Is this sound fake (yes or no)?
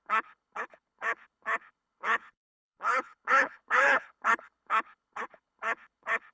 yes